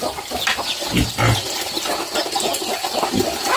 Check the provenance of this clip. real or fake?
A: real